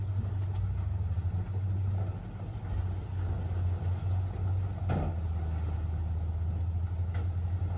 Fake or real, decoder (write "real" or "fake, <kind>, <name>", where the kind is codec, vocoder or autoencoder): real